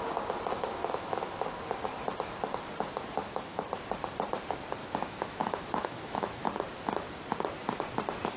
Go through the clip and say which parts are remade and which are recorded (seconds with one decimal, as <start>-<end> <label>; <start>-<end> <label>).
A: 0.0-0.5 recorded; 0.5-1.3 remade; 1.3-3.2 recorded; 3.2-3.7 remade; 3.7-4.8 recorded; 4.8-6.4 remade; 6.4-8.4 recorded